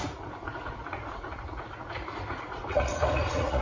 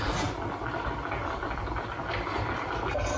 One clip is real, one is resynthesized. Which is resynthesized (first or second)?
first